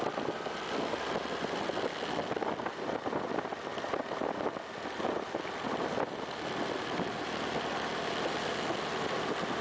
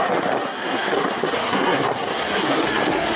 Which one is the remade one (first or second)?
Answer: second